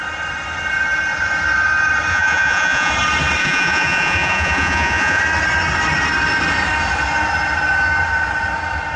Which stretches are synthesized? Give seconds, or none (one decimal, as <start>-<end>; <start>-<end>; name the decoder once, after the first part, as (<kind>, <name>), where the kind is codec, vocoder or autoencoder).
2.1-2.9 (vocoder, Vocos); 3.4-5.2